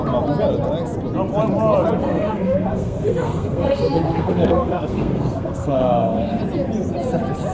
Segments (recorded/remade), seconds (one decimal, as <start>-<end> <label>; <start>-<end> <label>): 0.0-2.0 recorded; 2.0-6.4 remade; 6.4-7.5 recorded